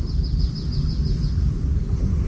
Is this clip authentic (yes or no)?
yes